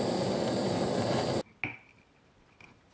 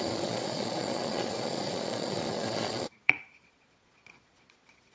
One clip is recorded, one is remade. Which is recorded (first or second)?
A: first